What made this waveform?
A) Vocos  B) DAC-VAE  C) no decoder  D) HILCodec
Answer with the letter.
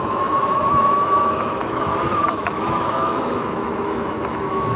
B